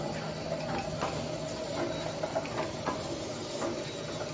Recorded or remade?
recorded